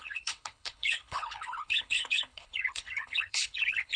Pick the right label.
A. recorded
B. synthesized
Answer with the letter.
B